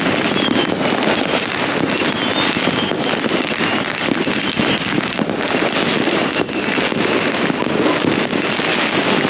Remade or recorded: recorded